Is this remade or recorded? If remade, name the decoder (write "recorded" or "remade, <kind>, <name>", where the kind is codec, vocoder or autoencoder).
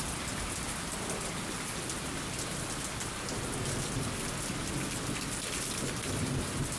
recorded